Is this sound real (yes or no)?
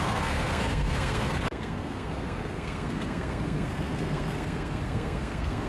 no